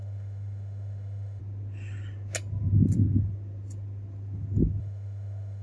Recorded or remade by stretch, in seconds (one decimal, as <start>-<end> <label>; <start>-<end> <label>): 0.0-1.4 remade; 1.4-4.8 recorded; 4.8-5.6 remade